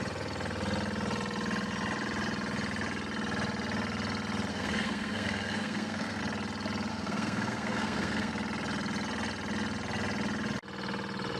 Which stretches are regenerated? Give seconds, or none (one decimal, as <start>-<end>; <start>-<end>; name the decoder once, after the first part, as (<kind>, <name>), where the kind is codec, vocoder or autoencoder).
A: 4.5-6.2 (codec, SNAC); 6.9-8.3